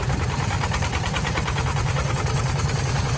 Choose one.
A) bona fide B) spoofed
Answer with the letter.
B